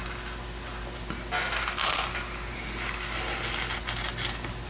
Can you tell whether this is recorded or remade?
recorded